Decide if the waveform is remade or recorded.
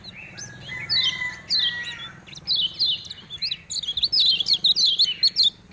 recorded